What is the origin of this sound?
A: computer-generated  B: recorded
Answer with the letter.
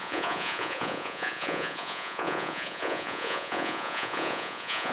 A